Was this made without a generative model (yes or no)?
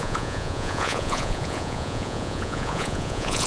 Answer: no